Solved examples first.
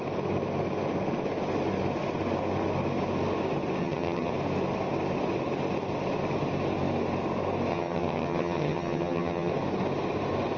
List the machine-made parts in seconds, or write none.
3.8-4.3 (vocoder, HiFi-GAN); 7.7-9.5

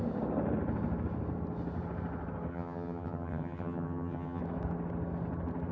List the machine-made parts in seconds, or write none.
2.5-4.4 (vocoder, HiFi-GAN)